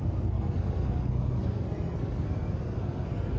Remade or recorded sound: remade